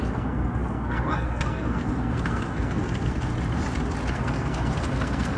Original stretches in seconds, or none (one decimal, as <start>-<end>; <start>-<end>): 3.3-4.1